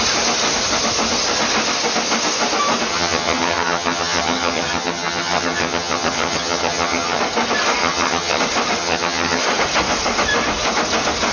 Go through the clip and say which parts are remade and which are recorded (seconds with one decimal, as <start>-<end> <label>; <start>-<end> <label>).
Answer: 0.0-2.9 recorded; 2.9-7.2 remade; 7.2-7.8 recorded; 7.8-8.4 remade; 8.4-8.8 recorded; 8.8-9.4 remade; 9.4-11.3 recorded